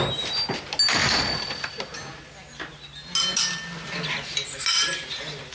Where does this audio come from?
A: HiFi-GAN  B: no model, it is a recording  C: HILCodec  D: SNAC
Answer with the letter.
B